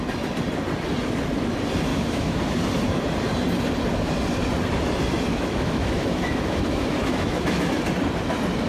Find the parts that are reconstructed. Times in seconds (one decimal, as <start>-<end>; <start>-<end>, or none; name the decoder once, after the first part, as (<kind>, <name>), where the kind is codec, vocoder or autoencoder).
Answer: 1.9-2.4 (autoencoder, DAC-VAE); 5.3-7.7